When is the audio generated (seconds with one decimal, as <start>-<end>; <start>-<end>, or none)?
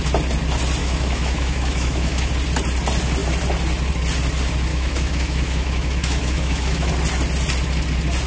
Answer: 0.8-2.3; 4.7-6.9